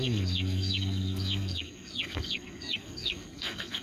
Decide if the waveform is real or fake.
fake